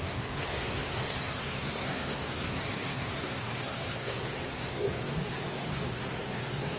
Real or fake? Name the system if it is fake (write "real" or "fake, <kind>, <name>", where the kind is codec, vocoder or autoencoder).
fake, codec, SNAC